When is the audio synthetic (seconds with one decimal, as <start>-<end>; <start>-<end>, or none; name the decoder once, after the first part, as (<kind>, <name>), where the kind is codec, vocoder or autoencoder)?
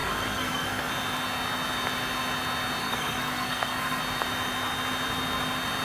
0.0-0.9 (codec, SNAC); 2.8-4.0